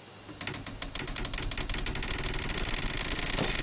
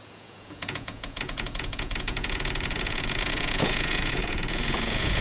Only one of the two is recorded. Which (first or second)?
first